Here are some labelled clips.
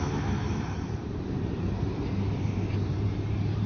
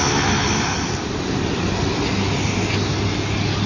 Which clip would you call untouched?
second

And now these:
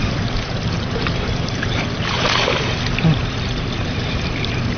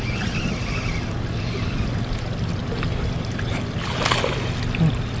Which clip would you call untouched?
second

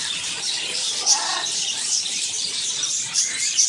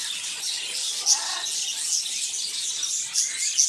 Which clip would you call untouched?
second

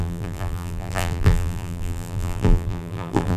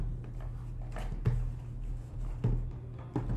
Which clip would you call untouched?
second